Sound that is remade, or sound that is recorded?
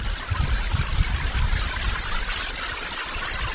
recorded